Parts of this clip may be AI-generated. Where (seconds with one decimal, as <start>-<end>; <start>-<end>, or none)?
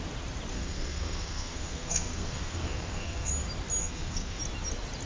0.5-3.3; 3.8-4.4